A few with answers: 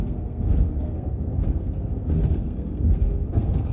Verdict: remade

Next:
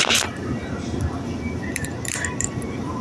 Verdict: remade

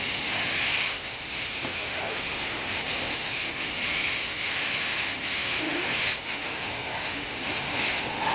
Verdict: remade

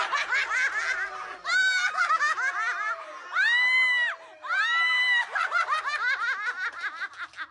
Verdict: recorded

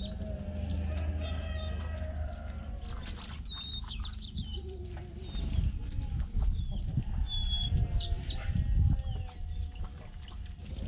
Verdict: recorded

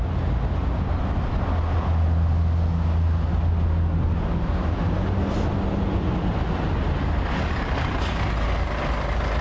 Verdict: recorded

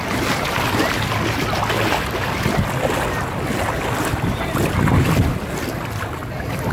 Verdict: recorded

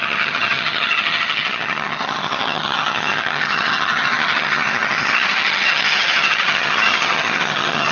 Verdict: remade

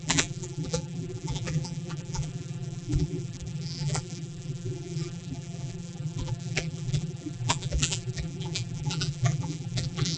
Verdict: remade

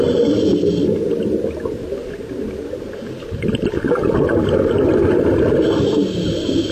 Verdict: recorded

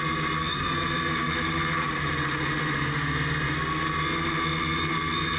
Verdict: recorded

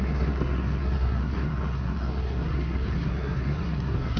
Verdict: remade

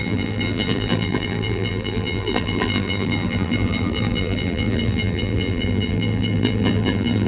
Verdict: remade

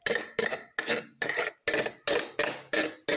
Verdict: recorded